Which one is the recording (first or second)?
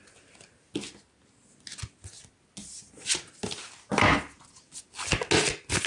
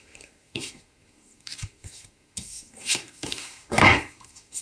first